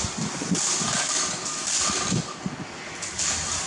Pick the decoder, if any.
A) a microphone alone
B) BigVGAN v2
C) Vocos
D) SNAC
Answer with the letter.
A